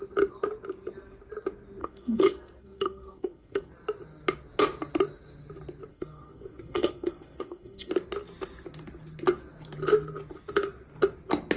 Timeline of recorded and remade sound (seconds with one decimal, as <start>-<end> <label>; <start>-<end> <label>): 0.0-1.8 recorded; 1.8-3.7 remade; 3.7-5.9 recorded; 5.9-7.9 remade; 7.9-11.6 recorded